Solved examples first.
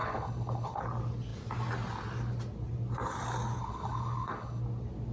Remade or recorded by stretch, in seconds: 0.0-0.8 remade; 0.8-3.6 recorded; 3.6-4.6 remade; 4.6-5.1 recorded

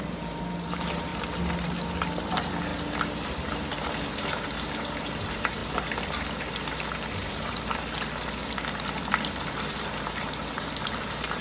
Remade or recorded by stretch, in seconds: 0.0-1.1 remade; 1.1-2.2 recorded; 2.2-2.7 remade; 2.7-3.3 recorded; 3.3-5.6 remade; 5.6-9.3 recorded; 9.3-11.4 remade